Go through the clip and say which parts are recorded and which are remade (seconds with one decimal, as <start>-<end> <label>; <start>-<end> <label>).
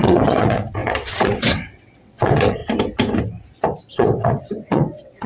0.0-2.6 remade; 2.6-3.9 recorded; 3.9-5.3 remade